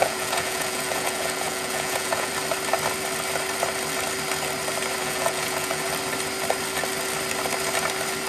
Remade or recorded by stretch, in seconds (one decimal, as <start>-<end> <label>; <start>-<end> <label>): 0.0-2.3 remade; 2.3-5.0 recorded; 5.0-5.8 remade; 5.8-8.3 recorded